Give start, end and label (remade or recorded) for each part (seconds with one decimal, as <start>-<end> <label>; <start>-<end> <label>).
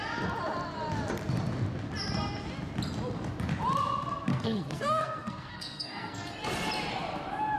0.0-4.3 recorded; 4.3-6.3 remade; 6.3-7.6 recorded